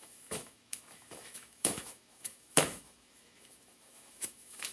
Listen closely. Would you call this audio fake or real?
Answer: fake